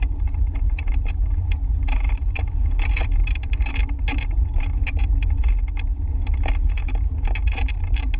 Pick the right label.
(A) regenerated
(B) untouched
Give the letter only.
A